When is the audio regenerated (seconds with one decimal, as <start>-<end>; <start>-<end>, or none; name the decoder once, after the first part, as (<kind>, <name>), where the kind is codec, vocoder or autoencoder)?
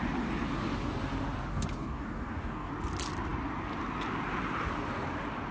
1.5-2.7 (codec, DAC)